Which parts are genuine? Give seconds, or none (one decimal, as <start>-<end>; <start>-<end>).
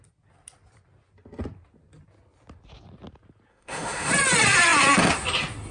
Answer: 0.0-3.5; 4.1-5.7